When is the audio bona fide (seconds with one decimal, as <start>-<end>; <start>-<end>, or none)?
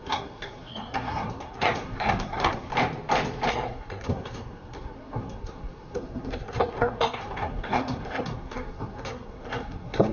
2.7-3.5